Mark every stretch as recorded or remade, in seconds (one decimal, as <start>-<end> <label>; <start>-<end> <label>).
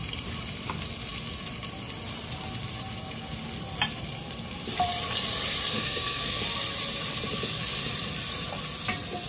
0.0-5.7 recorded; 5.7-6.4 remade; 6.4-9.3 recorded